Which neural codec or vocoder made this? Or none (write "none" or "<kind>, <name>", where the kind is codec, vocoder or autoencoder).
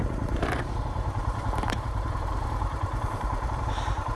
vocoder, BigVGAN v2